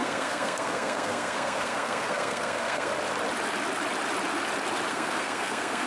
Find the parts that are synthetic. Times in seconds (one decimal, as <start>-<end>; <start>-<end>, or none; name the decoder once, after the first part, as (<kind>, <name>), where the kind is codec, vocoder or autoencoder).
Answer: 0.0-2.9 (codec, SNAC); 4.9-5.9